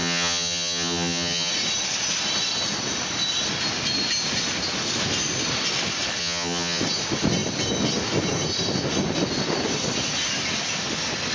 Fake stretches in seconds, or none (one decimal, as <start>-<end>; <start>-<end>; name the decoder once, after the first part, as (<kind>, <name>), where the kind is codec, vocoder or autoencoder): 0.0-1.5 (vocoder, HiFi-GAN); 6.2-6.8